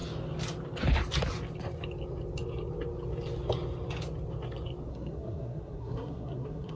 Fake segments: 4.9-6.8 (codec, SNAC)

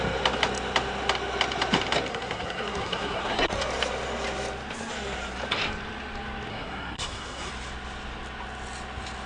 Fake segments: 2.1-3.5 (codec, SNAC); 6.5-7.5